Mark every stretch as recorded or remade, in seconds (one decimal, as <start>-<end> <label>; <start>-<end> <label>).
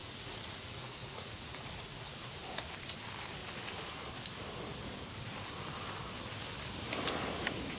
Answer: 0.0-2.1 remade; 2.1-7.8 recorded